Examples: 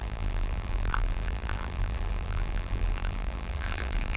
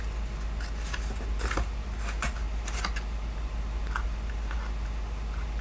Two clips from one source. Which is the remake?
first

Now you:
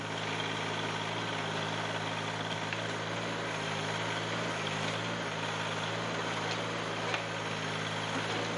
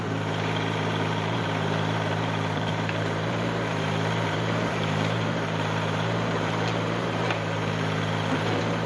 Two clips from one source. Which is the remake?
second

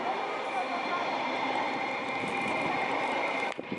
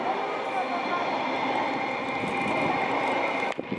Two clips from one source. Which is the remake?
first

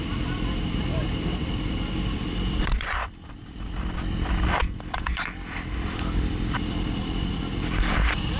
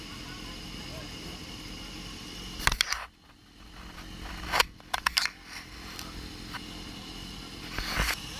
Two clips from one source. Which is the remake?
first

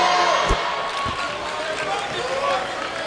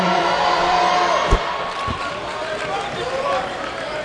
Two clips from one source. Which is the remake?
second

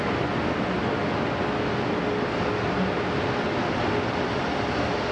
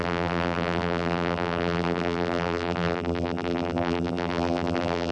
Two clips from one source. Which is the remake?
second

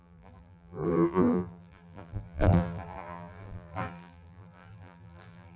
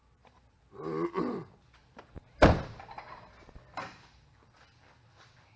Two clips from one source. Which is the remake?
first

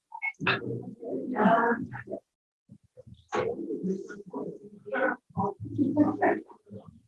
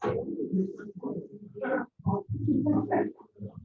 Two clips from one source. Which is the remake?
second